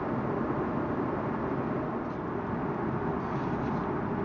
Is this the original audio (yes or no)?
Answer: yes